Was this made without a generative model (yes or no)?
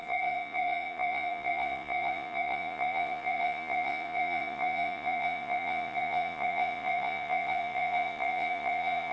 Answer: no